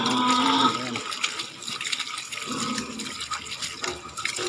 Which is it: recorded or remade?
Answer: recorded